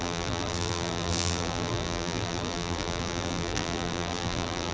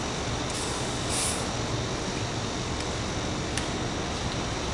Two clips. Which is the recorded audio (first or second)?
second